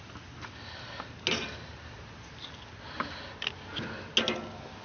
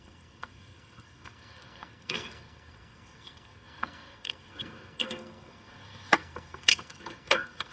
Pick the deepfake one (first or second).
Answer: second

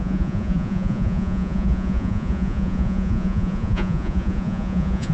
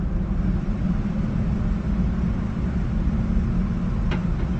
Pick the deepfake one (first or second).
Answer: first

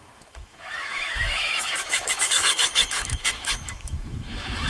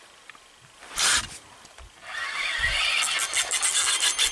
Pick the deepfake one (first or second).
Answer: first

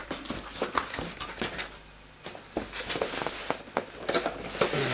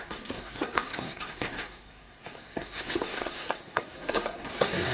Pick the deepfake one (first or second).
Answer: second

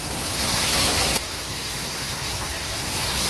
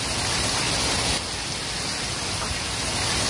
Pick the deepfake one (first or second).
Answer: first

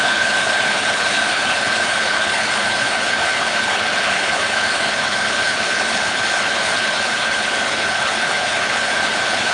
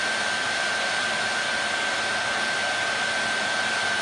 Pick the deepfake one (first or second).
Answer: first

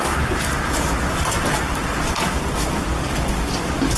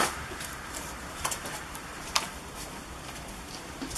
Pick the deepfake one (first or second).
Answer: second